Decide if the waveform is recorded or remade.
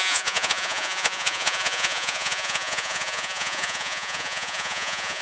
remade